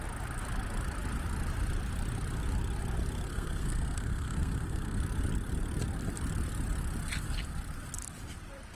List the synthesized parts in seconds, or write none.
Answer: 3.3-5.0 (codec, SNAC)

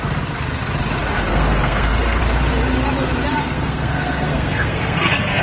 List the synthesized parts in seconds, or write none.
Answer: 1.3-2.2 (codec, SNAC); 3.3-5.4

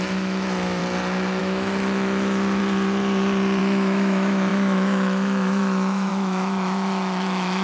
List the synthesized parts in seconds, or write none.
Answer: 0.0-0.8 (autoencoder, DAC-VAE); 1.4-2.6; 3.6-7.6

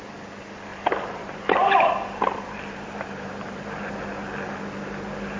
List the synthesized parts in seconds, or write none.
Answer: 0.7-3.9 (vocoder, BigVGAN v2)

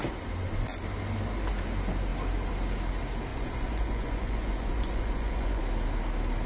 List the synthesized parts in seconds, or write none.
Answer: 3.3-5.6 (vocoder, Vocos)